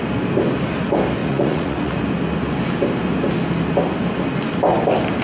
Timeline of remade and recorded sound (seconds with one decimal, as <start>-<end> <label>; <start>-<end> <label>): 0.0-1.2 recorded; 1.2-2.0 remade; 2.0-5.2 recorded